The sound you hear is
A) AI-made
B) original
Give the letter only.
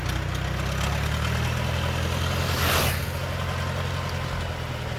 B